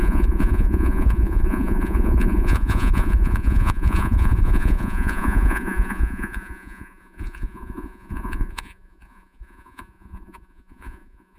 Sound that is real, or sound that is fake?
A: fake